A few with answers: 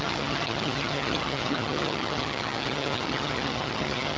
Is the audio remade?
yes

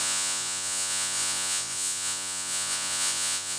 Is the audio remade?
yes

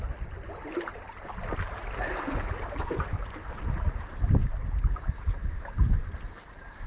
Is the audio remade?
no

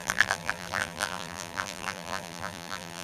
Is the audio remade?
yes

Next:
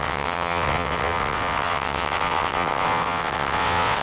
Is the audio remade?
yes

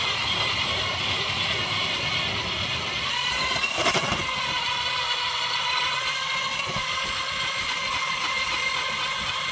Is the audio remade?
yes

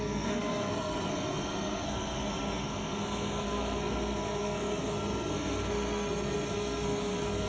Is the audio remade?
yes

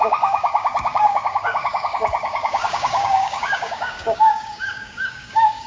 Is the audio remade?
yes